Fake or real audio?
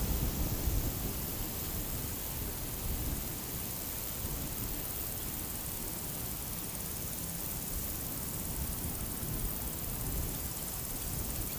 real